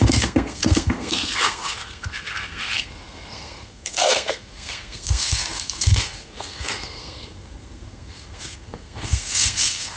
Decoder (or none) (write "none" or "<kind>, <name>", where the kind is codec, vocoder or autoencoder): codec, SNAC